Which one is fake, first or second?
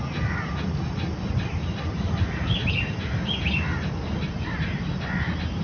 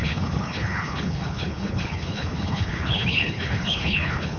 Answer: second